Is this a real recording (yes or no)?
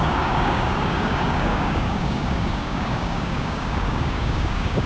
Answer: no